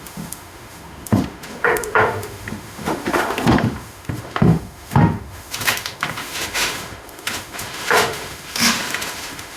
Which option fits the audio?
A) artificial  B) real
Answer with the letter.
A